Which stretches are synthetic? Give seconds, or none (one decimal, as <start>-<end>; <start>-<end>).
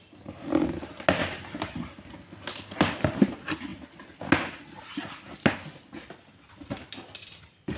none